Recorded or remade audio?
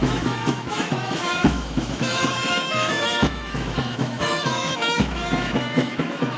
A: remade